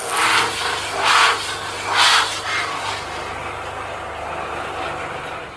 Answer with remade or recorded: recorded